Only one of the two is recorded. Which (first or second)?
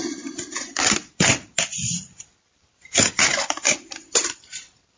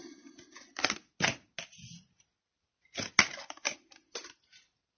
second